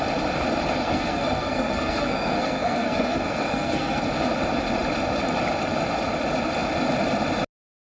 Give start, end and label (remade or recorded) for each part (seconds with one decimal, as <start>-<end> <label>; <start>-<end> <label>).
0.0-0.8 recorded; 0.8-4.0 remade; 4.0-8.0 recorded